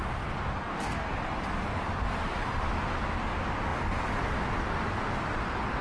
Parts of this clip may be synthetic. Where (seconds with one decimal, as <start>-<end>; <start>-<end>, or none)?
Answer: 0.6-1.1